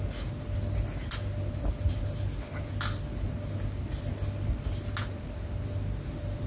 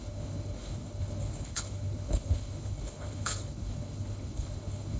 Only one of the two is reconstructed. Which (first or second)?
second